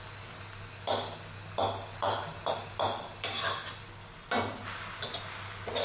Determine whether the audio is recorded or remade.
recorded